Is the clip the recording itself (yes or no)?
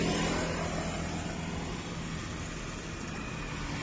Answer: yes